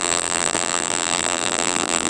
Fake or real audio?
fake